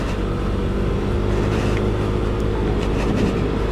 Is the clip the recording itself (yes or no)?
yes